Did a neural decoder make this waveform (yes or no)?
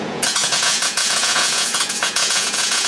yes